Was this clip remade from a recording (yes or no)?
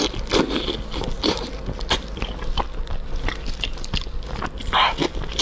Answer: no